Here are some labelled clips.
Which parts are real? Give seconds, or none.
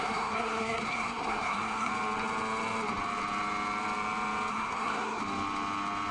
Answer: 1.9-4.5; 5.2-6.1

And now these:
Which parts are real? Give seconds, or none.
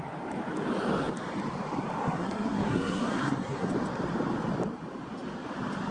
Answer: 0.0-2.0; 3.7-5.9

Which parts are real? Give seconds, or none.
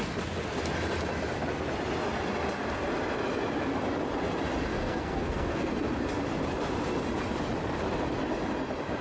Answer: 0.0-4.7; 5.7-9.0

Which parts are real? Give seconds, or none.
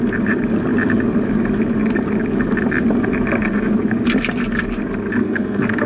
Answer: 0.0-5.2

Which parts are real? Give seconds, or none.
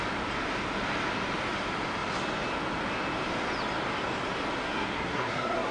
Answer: 0.0-4.6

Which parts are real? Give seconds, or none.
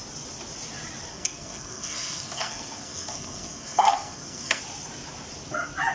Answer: 0.0-1.1; 4.6-5.9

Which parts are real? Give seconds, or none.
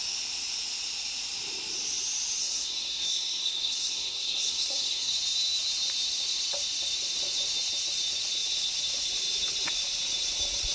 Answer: 0.0-2.4; 5.1-10.7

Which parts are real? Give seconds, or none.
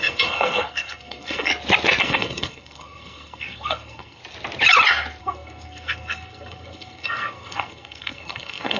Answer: 1.5-2.0; 4.2-5.2